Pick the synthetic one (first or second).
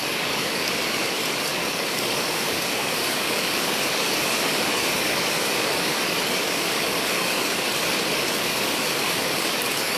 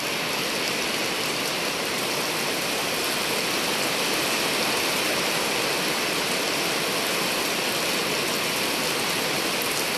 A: first